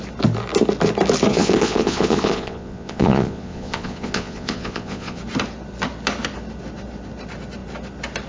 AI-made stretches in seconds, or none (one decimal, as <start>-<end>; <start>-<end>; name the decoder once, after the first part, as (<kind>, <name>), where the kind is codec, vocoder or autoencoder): 1.3-5.2 (vocoder, Vocos)